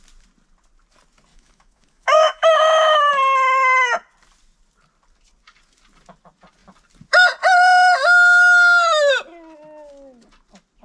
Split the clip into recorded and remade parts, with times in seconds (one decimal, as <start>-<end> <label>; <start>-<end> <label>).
0.0-1.3 recorded; 1.3-3.1 remade; 3.1-8.0 recorded; 8.0-9.1 remade; 9.1-10.8 recorded